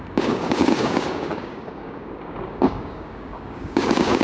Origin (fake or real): fake